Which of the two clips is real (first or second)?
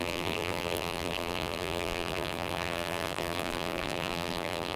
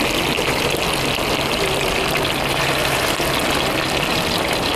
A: second